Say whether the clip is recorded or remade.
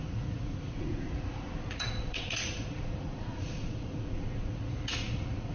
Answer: remade